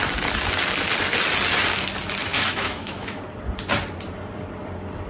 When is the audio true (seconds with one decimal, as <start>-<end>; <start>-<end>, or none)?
0.0-2.3; 3.2-5.1